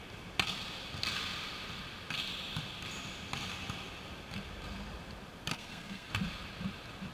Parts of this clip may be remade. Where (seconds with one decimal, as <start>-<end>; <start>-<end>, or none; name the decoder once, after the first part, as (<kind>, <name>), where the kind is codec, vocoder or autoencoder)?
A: 5.5-6.1 (codec, SNAC)